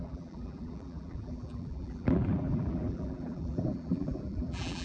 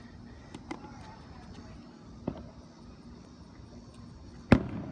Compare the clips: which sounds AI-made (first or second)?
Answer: first